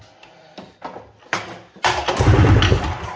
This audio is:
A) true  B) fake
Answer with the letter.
A